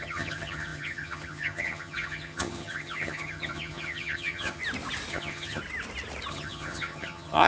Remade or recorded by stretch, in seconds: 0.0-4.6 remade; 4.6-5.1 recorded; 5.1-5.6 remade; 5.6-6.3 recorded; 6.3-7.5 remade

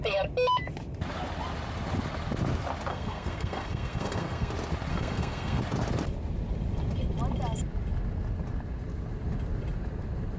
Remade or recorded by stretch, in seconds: 0.0-2.9 recorded; 2.9-4.5 remade; 4.5-4.9 recorded; 4.9-5.6 remade; 5.6-10.4 recorded